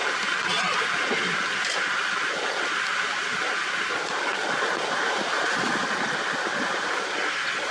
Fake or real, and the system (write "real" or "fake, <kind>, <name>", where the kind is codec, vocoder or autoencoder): real